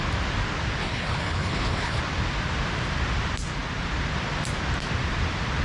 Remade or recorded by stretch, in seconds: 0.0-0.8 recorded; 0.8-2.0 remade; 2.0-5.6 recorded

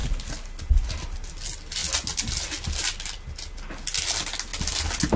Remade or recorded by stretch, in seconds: 0.0-5.2 recorded

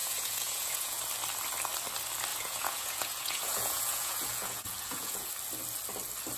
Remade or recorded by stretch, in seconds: 0.0-1.0 remade; 1.0-2.3 recorded; 2.3-5.3 remade; 5.3-6.4 recorded

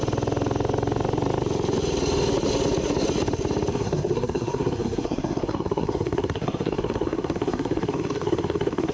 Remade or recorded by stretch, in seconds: 0.0-3.7 recorded; 3.7-8.9 remade

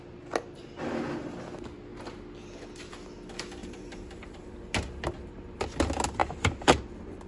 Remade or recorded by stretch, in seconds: 0.0-3.6 recorded; 3.6-4.5 remade; 4.5-6.2 recorded; 6.2-6.8 remade; 6.8-7.3 recorded